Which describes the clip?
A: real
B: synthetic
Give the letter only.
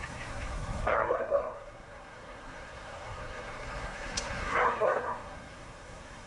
B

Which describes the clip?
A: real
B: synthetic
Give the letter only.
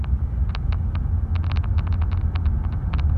A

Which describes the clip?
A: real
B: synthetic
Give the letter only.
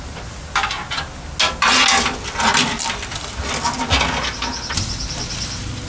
A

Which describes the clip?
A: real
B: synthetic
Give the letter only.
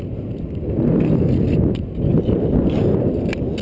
A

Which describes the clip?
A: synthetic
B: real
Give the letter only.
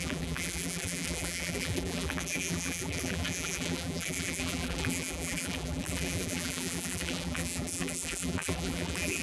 A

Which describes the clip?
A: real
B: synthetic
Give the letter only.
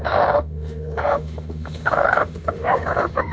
B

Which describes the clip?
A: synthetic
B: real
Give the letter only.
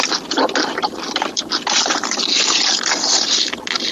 B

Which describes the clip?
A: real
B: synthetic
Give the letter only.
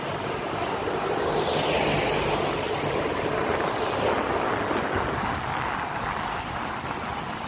A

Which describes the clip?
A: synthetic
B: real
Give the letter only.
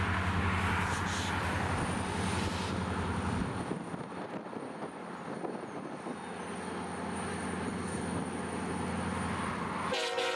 B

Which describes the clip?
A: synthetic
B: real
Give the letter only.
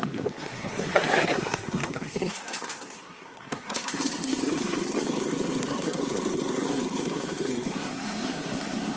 A